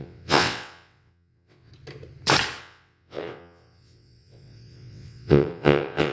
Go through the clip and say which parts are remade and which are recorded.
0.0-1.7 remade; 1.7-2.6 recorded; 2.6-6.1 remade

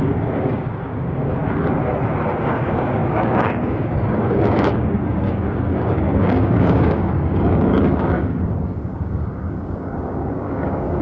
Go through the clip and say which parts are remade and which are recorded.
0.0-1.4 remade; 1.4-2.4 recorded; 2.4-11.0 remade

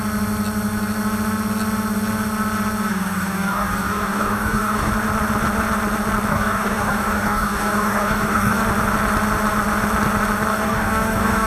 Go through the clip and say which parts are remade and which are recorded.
0.0-2.9 recorded; 2.9-4.9 remade; 4.9-6.3 recorded; 6.3-8.6 remade; 8.6-10.5 recorded; 10.5-11.5 remade

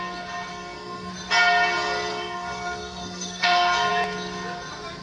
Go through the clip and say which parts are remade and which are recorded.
0.0-0.5 recorded; 0.5-1.1 remade; 1.1-2.1 recorded; 2.1-3.9 remade; 3.9-5.0 recorded